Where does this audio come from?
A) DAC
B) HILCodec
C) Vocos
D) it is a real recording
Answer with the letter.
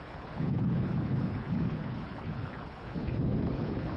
B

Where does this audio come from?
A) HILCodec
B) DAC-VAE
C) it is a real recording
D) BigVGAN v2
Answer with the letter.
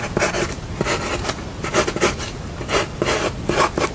C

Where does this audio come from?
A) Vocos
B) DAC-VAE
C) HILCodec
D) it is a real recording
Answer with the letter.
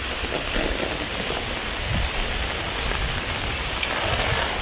D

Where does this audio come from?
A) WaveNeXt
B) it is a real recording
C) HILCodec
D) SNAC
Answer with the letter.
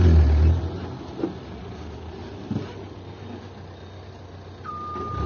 B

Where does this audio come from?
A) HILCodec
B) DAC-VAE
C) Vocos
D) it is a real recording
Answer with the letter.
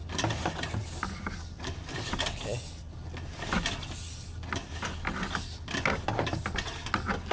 D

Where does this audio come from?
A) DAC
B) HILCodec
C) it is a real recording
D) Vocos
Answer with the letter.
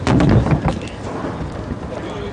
C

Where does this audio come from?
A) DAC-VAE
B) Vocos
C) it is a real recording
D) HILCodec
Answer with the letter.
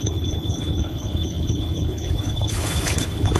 D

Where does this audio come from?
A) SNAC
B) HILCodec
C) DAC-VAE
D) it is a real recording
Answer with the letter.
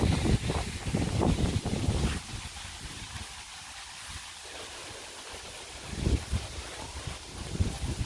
D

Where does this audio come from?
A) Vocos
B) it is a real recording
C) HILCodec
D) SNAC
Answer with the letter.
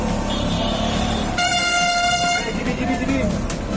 B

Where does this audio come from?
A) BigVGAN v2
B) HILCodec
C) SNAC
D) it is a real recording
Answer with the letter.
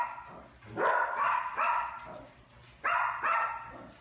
D